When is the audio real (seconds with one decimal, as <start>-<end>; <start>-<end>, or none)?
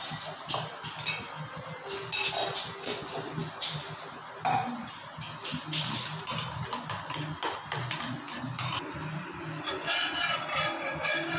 0.0-11.4